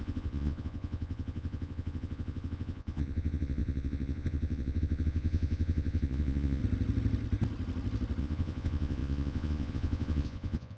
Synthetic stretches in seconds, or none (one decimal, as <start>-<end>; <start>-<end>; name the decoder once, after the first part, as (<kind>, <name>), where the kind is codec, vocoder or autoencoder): 0.0-6.6 (vocoder, Vocos); 8.2-10.8

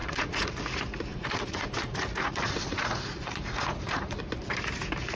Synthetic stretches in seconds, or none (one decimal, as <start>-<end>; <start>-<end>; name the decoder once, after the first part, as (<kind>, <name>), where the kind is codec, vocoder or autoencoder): 0.0-0.5 (vocoder, Vocos); 1.1-4.2

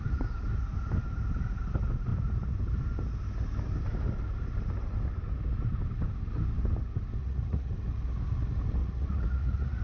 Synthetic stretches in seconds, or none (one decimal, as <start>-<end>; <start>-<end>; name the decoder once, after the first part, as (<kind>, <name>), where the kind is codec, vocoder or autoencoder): 7.2-7.7 (vocoder, Vocos); 8.8-9.8

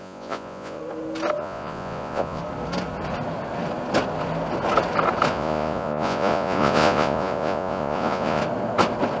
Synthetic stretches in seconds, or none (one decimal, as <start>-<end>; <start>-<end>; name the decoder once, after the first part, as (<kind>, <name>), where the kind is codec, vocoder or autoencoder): 0.0-0.8 (vocoder, Vocos); 1.4-2.4; 5.3-8.4

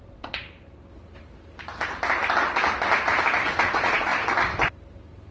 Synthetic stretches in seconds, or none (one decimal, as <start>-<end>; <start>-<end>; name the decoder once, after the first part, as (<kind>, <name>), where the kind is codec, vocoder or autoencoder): 0.0-0.4 (vocoder, Vocos); 3.6-4.1

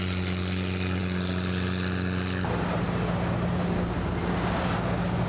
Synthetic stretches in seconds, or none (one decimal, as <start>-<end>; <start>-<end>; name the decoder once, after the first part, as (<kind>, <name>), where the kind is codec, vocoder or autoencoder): none

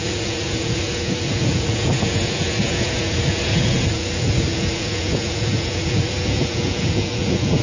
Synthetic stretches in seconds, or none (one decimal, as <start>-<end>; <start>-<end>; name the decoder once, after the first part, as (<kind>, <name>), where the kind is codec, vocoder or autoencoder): 0.0-7.6 (vocoder, Vocos)

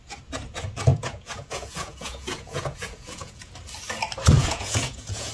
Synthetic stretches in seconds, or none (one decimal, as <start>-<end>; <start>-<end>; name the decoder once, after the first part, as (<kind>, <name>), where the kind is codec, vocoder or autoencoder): 0.9-3.5 (vocoder, Vocos); 4.4-5.3